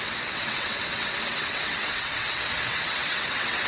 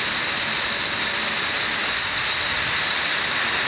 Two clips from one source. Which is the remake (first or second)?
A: first